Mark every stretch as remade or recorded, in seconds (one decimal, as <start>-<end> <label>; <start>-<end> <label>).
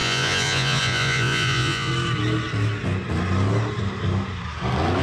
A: 0.0-1.9 remade; 1.9-5.0 recorded